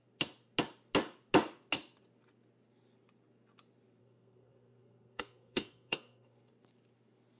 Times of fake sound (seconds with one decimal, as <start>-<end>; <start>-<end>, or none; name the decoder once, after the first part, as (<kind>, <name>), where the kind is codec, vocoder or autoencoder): 4.0-6.5 (codec, SNAC)